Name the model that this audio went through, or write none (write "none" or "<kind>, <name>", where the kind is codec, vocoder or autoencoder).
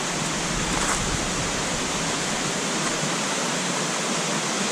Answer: none